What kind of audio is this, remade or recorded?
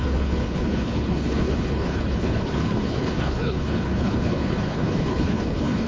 remade